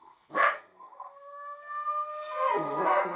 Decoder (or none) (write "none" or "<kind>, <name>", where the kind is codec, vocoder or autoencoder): codec, SNAC